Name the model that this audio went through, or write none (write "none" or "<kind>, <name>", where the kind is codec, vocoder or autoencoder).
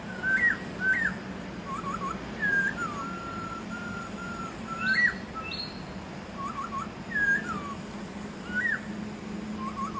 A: none